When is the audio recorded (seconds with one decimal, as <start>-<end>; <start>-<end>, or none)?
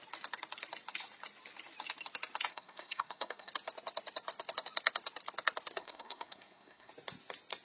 0.0-2.5; 3.5-5.8; 6.9-7.6